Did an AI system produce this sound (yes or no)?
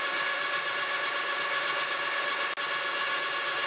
no